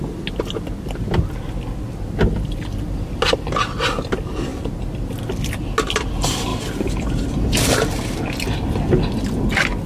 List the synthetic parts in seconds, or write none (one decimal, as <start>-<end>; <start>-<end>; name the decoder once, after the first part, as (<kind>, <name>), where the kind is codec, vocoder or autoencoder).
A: none